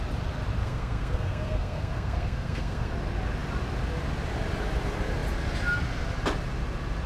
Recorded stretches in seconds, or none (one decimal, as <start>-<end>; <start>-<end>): 0.0-0.6; 2.9-7.1